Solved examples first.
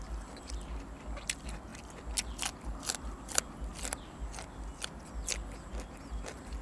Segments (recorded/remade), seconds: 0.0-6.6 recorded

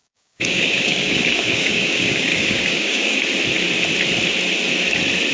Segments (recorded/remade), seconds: 0.0-3.2 remade; 3.2-5.3 recorded

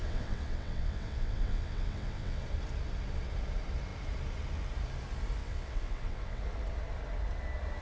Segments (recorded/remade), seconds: 0.0-2.4 remade; 2.4-5.4 recorded; 5.4-6.4 remade; 6.4-7.8 recorded

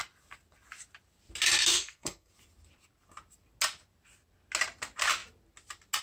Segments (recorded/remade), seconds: 0.0-1.7 recorded; 1.7-2.3 remade; 2.3-6.0 recorded

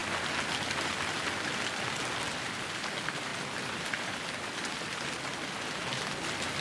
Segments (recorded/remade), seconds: 0.0-6.6 recorded